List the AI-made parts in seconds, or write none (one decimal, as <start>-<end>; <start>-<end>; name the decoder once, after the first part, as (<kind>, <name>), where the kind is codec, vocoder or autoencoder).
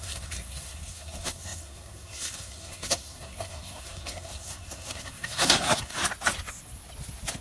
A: 0.0-6.0 (codec, SNAC)